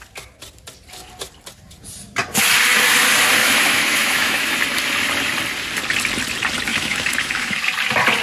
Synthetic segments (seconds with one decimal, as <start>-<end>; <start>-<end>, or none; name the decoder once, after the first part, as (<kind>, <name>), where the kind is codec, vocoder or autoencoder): 3.4-4.5 (autoencoder, DAC-VAE); 6.7-7.6